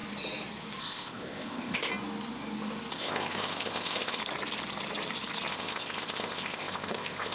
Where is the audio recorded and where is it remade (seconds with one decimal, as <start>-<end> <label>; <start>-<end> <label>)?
0.0-0.8 recorded; 0.8-1.9 remade; 1.9-2.9 recorded; 2.9-4.2 remade; 4.2-5.5 recorded; 5.5-7.3 remade